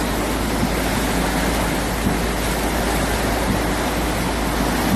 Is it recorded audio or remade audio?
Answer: recorded